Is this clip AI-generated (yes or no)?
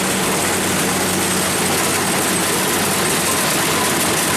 no